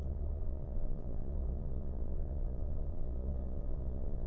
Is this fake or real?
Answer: fake